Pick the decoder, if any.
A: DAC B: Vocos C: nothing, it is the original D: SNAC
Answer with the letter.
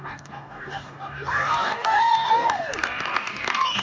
A